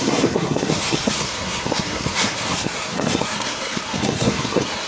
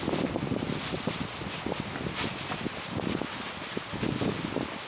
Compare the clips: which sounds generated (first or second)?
first